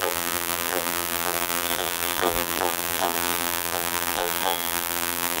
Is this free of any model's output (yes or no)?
no